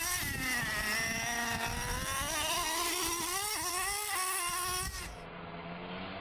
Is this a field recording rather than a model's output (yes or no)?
yes